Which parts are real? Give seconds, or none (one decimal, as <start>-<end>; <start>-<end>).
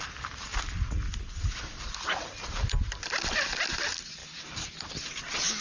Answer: 0.0-5.6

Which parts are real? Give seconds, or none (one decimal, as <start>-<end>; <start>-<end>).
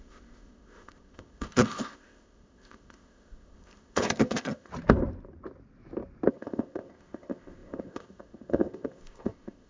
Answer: 4.7-6.3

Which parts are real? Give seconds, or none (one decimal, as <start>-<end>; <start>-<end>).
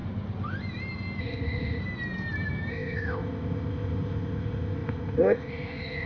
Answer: 0.0-1.2; 1.8-2.7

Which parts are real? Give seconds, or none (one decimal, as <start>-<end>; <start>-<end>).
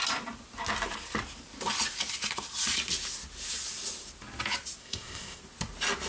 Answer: 0.0-4.8; 5.4-6.1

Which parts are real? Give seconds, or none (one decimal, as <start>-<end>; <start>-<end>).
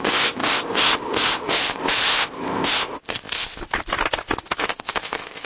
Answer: 3.6-4.6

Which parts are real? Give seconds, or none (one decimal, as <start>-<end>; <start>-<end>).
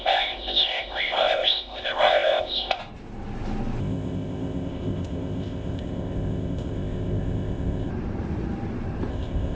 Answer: 2.8-3.8; 7.9-9.1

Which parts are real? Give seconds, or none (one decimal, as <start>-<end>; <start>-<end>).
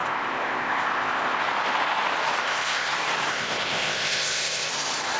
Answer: 1.4-2.4; 2.9-3.3; 4.7-5.2